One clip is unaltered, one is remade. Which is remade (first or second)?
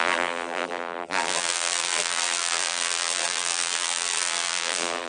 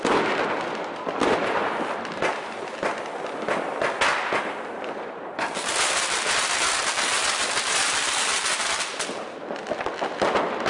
first